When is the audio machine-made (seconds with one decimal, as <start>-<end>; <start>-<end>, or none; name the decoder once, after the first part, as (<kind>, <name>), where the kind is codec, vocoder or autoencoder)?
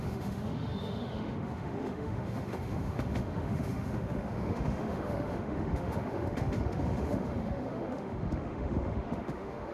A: 0.0-9.7 (autoencoder, DAC-VAE)